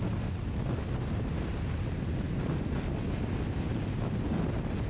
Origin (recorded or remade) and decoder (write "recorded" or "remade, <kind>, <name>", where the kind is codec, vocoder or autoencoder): recorded